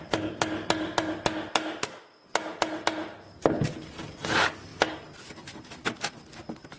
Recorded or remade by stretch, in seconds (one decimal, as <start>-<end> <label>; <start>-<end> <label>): 0.0-6.8 recorded